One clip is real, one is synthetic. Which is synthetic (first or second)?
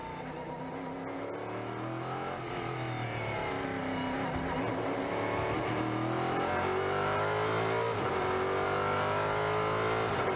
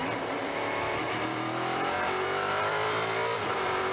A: second